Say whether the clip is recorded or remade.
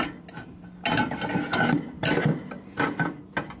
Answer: recorded